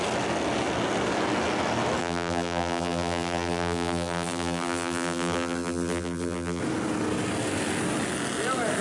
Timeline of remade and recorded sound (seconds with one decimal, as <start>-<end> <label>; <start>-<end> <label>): 0.0-2.0 recorded; 2.0-6.6 remade; 6.6-8.8 recorded